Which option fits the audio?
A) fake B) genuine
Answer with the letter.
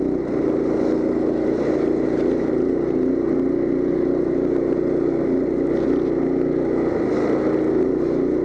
B